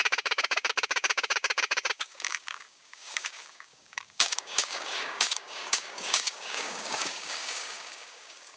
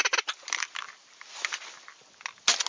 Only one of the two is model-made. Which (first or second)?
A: first